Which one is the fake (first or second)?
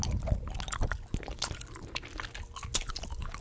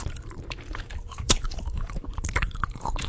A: second